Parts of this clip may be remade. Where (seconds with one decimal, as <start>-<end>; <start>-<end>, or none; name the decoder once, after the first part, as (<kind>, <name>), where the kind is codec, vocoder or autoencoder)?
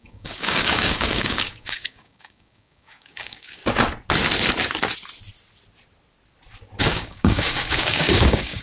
0.0-3.6 (codec, DAC); 6.8-8.6